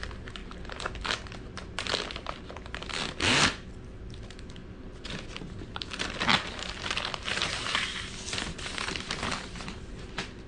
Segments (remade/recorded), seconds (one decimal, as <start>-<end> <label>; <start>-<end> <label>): 0.0-10.5 recorded